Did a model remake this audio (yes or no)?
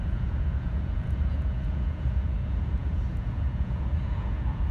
yes